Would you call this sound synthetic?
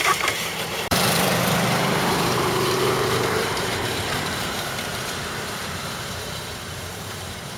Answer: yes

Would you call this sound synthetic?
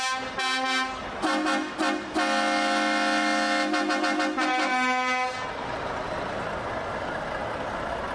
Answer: no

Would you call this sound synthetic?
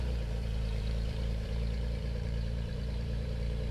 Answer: yes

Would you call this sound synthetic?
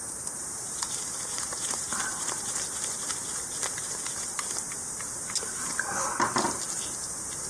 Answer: yes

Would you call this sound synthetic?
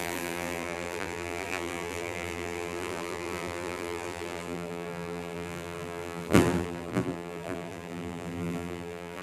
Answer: yes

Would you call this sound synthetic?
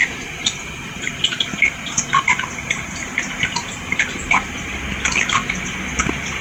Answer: no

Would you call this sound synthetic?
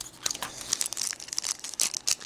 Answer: no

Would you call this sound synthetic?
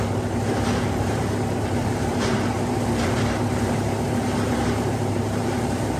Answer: yes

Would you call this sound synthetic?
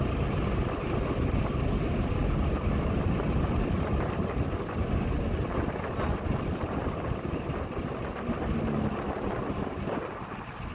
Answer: no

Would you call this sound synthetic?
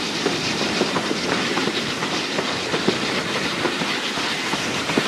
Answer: yes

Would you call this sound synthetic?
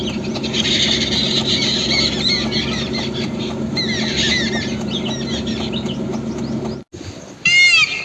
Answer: no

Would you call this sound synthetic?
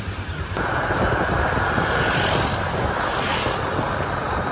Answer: no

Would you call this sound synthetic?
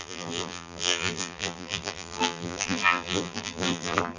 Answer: yes